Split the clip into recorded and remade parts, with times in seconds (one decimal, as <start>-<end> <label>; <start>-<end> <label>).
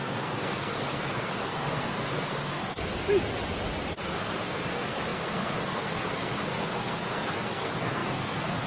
0.0-2.9 remade; 2.9-4.0 recorded; 4.0-8.7 remade